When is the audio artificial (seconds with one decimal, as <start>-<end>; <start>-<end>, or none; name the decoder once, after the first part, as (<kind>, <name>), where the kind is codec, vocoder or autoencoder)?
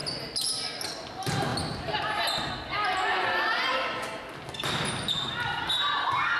0.0-0.8 (vocoder, BigVGAN v2)